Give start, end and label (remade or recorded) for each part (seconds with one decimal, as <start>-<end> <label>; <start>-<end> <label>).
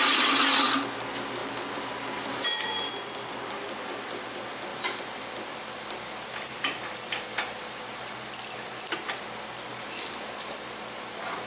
0.0-1.4 recorded; 1.4-1.9 remade; 1.9-2.3 recorded; 2.3-2.9 remade; 2.9-4.7 recorded; 4.7-8.0 remade; 8.0-9.7 recorded; 9.7-10.5 remade; 10.5-11.5 recorded